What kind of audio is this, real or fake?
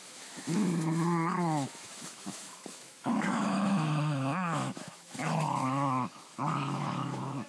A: fake